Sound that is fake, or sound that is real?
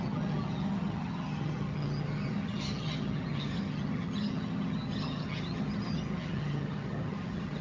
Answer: fake